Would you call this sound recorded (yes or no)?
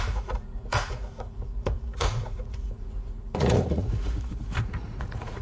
no